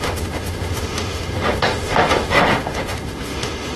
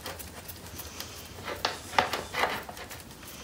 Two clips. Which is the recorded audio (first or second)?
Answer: second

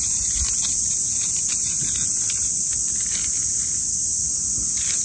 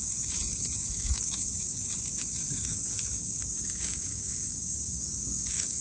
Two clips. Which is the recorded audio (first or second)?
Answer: first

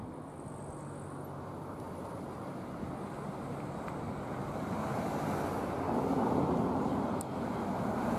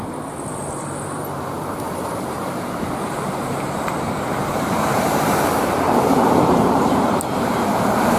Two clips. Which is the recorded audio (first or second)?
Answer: first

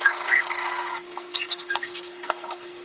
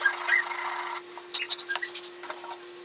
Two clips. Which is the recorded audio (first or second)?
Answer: second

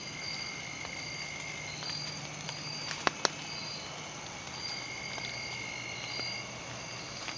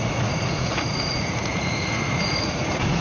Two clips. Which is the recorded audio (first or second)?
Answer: first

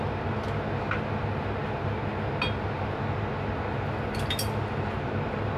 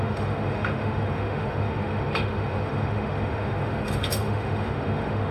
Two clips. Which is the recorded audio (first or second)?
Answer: first